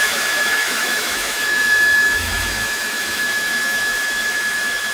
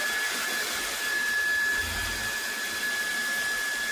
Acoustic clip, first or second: second